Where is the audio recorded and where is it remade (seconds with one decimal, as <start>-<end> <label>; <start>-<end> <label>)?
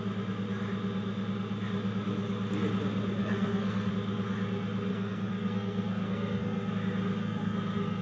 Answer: 0.0-3.2 recorded; 3.2-3.9 remade; 3.9-4.9 recorded; 4.9-6.7 remade; 6.7-7.2 recorded; 7.2-8.0 remade